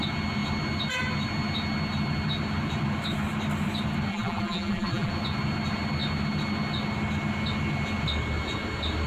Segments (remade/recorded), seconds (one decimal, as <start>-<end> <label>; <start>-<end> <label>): 0.0-4.1 recorded; 4.1-5.1 remade; 5.1-9.1 recorded